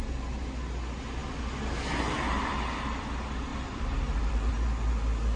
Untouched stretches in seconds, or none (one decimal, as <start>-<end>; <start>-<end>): 0.0-3.5; 4.5-5.4